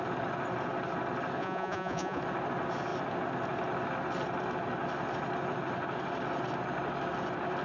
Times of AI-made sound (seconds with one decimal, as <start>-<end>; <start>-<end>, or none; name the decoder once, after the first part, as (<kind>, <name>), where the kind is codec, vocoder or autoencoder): 1.4-2.2 (vocoder, Vocos)